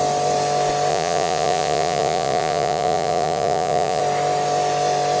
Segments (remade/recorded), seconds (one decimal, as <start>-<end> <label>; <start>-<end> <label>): 0.0-0.9 recorded; 0.9-4.0 remade; 4.0-5.2 recorded